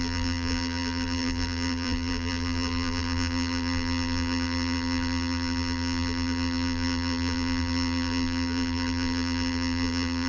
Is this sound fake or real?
fake